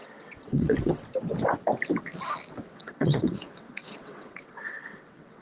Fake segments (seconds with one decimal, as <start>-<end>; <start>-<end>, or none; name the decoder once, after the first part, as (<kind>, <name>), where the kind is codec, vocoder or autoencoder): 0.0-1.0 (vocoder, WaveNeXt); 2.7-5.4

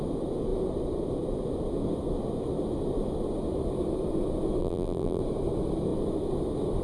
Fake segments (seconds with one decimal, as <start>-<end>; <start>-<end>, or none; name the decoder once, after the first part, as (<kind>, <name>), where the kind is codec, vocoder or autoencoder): 4.6-5.2 (vocoder, BigVGAN v2)

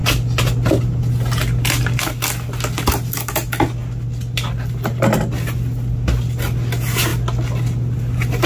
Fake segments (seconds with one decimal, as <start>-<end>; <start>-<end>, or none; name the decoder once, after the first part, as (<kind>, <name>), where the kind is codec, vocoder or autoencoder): none

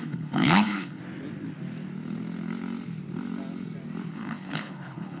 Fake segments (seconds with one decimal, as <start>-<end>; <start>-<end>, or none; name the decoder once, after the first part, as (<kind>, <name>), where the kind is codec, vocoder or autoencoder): 0.0-1.0 (codec, HILCodec); 4.1-5.2

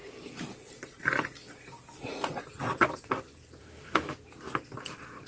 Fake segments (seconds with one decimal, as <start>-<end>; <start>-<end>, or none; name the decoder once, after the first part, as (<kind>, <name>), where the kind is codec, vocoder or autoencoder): 3.6-4.1 (autoencoder, DAC-VAE)

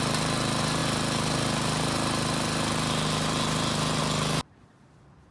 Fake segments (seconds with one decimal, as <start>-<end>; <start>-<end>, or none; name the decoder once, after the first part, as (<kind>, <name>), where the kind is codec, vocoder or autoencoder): none

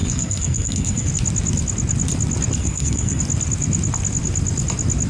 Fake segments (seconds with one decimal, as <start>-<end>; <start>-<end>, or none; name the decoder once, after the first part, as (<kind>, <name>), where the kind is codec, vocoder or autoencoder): 0.0-1.1 (codec, SNAC); 2.6-3.2

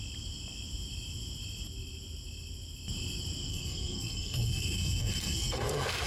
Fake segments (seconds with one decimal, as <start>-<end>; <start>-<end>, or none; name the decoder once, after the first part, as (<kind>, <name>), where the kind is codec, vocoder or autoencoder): 3.5-6.1 (codec, SNAC)